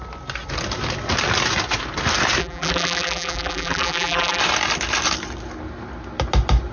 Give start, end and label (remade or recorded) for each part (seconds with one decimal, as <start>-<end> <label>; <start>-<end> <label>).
0.0-2.4 recorded; 2.4-4.4 remade; 4.4-6.7 recorded